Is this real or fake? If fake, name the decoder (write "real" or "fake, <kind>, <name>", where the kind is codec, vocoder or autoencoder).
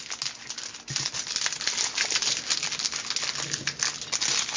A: real